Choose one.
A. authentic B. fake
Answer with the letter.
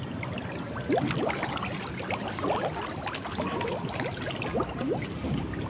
A